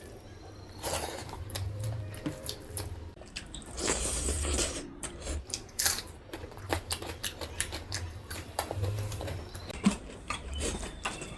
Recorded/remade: remade